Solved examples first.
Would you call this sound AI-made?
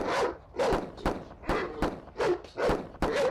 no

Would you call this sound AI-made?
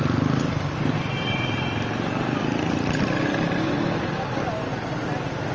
no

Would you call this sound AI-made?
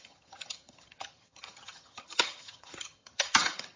yes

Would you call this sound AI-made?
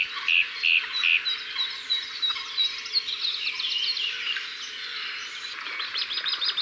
no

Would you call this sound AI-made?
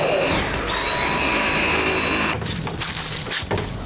no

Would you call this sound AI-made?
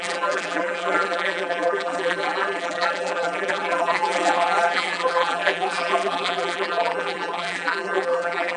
yes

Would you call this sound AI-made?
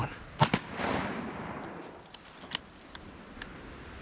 no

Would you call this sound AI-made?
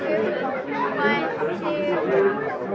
no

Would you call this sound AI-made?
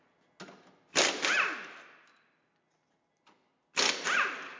no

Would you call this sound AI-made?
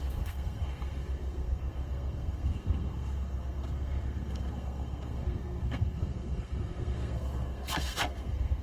yes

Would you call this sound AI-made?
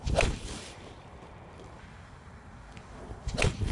yes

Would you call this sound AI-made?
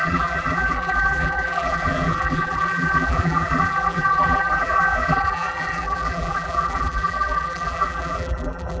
yes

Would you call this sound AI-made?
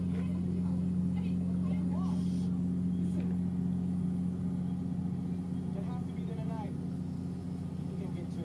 no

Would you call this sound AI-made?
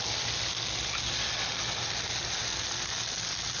no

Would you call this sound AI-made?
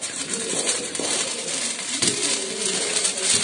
no